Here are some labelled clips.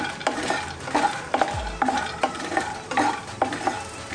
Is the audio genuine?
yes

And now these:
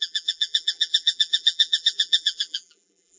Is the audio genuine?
no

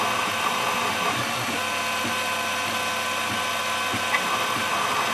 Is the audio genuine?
yes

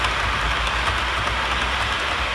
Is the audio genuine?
yes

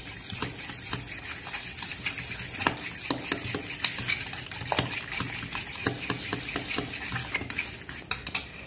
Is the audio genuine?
yes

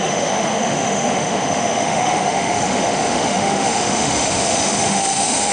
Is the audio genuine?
no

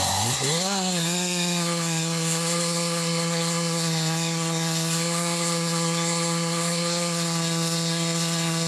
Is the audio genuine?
no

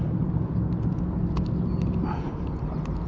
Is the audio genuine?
yes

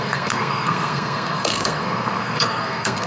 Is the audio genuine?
no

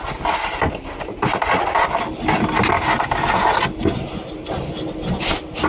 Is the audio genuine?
yes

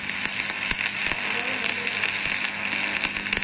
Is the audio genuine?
yes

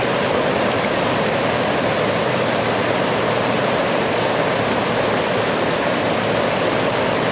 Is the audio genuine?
no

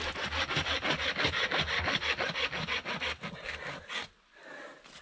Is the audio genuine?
yes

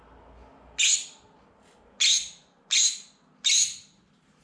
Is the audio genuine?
yes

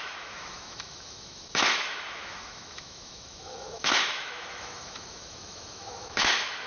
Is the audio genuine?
no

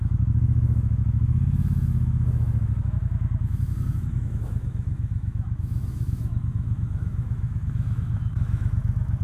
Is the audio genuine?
no